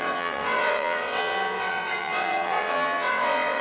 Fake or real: fake